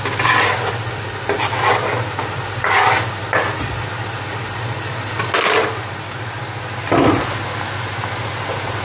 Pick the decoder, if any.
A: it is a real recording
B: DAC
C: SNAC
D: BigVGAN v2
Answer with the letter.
A